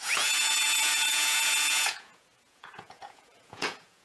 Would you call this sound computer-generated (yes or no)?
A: yes